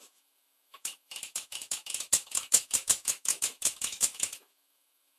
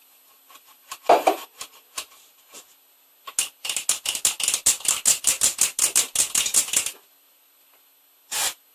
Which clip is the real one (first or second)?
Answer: second